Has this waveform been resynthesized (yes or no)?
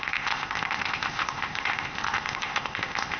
yes